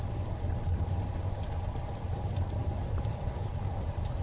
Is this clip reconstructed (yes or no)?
no